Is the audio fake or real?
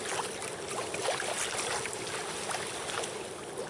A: real